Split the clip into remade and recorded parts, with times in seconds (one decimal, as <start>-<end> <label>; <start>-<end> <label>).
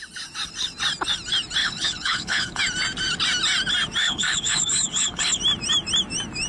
0.0-1.6 recorded; 1.6-2.6 remade; 2.6-4.0 recorded; 4.0-5.4 remade; 5.4-6.5 recorded